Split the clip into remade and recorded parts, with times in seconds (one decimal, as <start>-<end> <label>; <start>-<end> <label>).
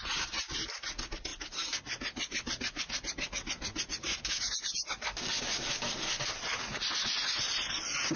0.0-8.2 recorded